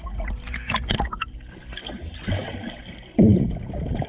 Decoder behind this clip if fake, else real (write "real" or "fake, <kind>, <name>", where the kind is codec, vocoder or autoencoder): real